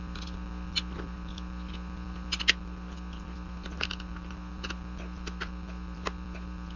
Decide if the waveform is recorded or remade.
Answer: recorded